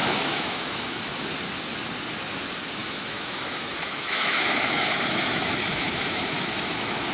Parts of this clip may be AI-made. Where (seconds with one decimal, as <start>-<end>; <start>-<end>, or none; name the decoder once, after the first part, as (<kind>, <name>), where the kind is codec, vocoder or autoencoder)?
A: 0.0-1.2 (autoencoder, DAC-VAE); 2.8-7.1